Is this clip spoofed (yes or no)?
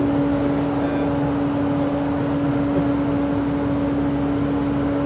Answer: no